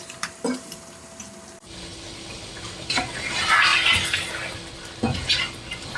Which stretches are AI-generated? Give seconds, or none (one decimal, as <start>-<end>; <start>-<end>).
none